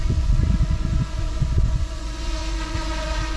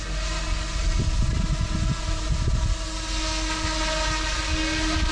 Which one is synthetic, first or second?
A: first